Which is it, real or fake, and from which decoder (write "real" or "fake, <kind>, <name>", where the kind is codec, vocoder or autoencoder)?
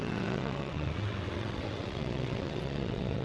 fake, vocoder, WaveNeXt